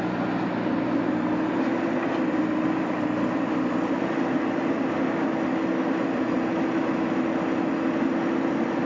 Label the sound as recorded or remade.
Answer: recorded